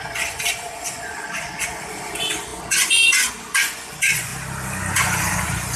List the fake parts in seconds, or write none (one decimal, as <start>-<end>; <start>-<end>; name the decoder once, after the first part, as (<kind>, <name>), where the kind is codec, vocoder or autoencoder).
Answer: 0.0-4.3 (vocoder, Vocos); 4.9-5.8

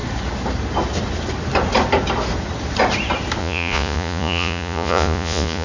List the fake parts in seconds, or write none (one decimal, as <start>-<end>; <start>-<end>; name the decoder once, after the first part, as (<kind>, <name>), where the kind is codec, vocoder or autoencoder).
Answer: 3.4-5.6 (vocoder, Vocos)